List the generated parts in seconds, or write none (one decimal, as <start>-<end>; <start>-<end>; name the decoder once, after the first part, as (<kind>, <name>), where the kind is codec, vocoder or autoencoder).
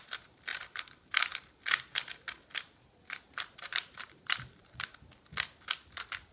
3.6-4.9 (vocoder, BigVGAN v2)